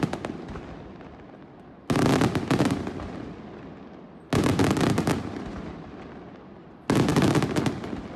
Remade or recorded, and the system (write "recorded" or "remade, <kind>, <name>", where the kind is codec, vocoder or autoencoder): recorded